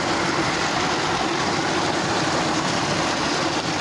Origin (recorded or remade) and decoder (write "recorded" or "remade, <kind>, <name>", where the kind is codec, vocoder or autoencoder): recorded